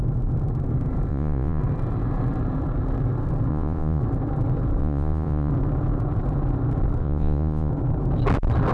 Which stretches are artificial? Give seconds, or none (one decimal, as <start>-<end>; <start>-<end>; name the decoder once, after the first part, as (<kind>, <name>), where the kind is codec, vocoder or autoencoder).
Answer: 1.1-1.6 (vocoder, Vocos); 3.5-4.0; 4.8-5.5; 7.0-7.7